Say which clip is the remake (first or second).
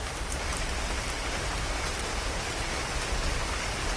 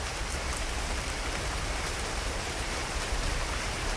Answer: second